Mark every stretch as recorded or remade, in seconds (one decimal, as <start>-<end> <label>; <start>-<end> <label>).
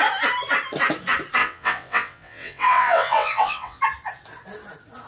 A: 0.0-1.4 recorded; 1.4-3.8 remade; 3.8-5.1 recorded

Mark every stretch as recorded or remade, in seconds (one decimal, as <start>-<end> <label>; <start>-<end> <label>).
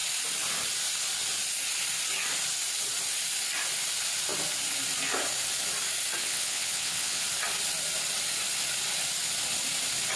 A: 0.0-6.2 recorded; 6.2-7.2 remade; 7.2-10.2 recorded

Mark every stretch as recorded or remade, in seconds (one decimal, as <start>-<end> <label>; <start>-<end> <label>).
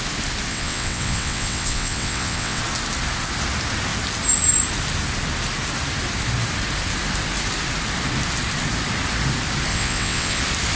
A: 0.0-0.5 recorded; 0.5-2.6 remade; 2.6-9.7 recorded; 9.7-10.4 remade; 10.4-10.8 recorded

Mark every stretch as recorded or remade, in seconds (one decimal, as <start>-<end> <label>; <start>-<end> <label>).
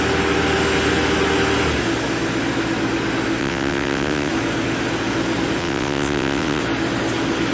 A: 0.0-3.4 recorded; 3.4-4.3 remade; 4.3-5.6 recorded; 5.6-6.6 remade; 6.6-7.5 recorded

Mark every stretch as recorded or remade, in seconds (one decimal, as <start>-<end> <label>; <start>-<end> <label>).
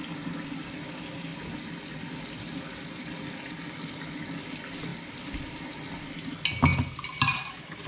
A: 0.0-7.9 recorded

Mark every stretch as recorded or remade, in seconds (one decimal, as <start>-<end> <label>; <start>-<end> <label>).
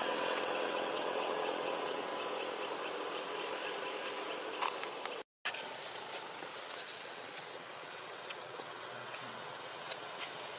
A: 0.0-2.1 remade; 2.1-6.3 recorded; 6.3-10.6 remade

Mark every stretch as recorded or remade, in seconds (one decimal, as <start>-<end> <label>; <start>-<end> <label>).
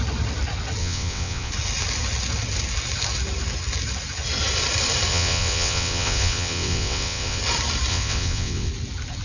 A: 0.0-0.8 recorded; 0.8-1.5 remade; 1.5-5.1 recorded; 5.1-7.4 remade; 7.4-7.9 recorded; 7.9-8.7 remade; 8.7-9.2 recorded